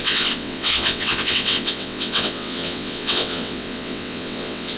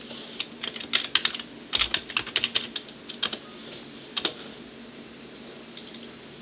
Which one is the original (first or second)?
second